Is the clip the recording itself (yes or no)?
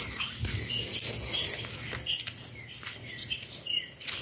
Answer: yes